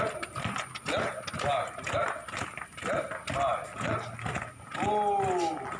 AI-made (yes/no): no